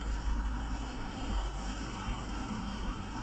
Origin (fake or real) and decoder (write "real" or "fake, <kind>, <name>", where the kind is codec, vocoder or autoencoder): fake, codec, SNAC